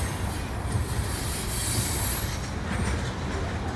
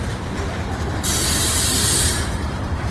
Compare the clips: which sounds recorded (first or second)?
first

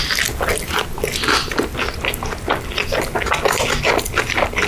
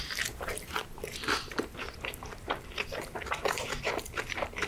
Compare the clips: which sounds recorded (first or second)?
first